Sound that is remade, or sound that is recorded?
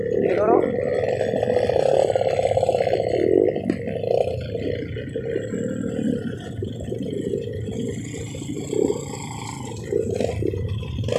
recorded